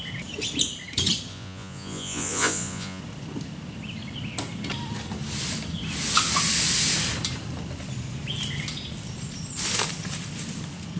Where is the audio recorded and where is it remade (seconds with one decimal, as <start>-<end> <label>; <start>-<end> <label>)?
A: 0.0-1.3 recorded; 1.3-3.0 remade; 3.0-11.0 recorded